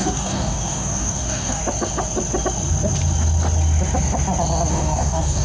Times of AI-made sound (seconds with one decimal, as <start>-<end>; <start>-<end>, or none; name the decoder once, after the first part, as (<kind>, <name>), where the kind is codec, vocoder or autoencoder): 0.0-1.6 (codec, DAC); 4.7-5.4